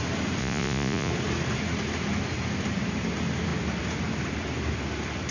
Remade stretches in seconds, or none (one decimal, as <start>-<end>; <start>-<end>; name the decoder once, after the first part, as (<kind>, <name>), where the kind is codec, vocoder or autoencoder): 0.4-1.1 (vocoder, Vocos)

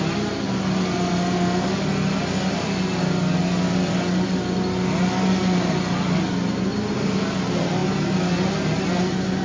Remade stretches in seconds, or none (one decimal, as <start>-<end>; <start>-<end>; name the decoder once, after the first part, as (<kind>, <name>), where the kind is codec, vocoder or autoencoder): none

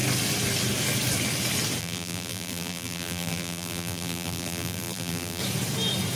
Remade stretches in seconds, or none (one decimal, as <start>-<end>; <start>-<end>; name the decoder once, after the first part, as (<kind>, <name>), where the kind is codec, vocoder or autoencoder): 1.8-5.4 (vocoder, BigVGAN v2)

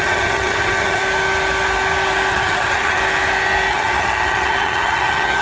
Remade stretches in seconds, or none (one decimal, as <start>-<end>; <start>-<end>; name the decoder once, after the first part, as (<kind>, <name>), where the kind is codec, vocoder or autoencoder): 0.0-1.0 (vocoder, HiFi-GAN); 2.3-3.0; 3.7-5.4

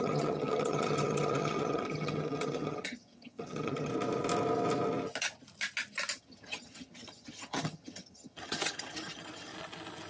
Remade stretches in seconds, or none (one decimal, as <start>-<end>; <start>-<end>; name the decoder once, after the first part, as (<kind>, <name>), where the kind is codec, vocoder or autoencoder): 0.0-3.9 (vocoder, HiFi-GAN); 6.2-9.5